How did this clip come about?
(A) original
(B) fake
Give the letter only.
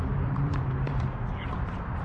B